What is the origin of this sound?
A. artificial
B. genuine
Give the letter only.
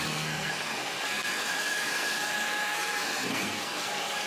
A